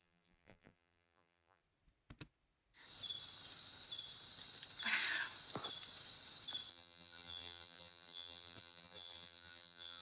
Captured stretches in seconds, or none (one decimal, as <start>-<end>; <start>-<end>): 1.6-6.7